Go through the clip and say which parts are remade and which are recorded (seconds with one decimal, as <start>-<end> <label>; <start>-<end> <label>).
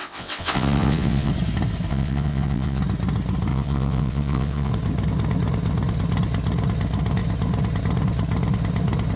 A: 0.0-1.3 remade; 1.3-1.9 recorded; 1.9-2.8 remade; 2.8-3.5 recorded; 3.5-4.7 remade; 4.7-9.2 recorded